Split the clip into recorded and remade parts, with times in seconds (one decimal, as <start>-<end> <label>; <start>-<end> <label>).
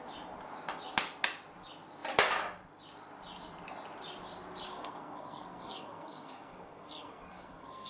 0.0-4.7 recorded; 4.7-7.9 remade